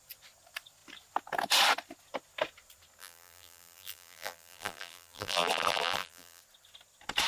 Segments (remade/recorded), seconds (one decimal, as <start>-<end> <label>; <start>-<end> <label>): 0.0-3.0 recorded; 3.0-6.4 remade; 6.4-7.3 recorded